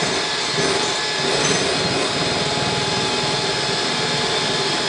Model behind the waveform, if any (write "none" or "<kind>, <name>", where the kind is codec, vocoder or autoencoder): none